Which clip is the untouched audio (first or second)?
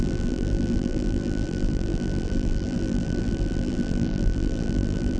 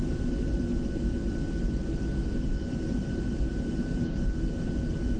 second